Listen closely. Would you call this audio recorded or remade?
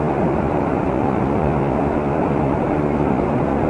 remade